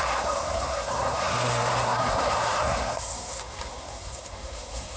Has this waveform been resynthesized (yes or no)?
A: yes